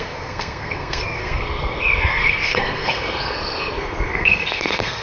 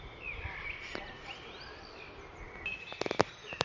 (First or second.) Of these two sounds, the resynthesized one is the first